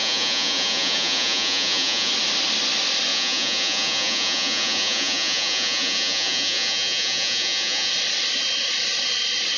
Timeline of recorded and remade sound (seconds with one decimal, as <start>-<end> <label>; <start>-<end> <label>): 0.0-2.1 remade; 2.1-3.1 recorded; 3.1-7.9 remade; 7.9-9.6 recorded